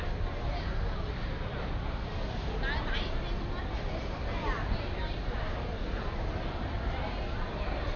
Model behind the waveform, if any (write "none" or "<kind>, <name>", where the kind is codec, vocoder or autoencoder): none